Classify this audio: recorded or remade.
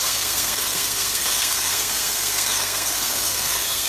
remade